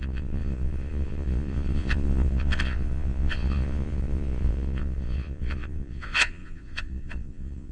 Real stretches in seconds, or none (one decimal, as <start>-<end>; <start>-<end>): none